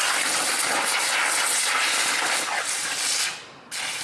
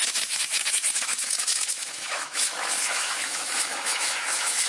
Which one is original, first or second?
first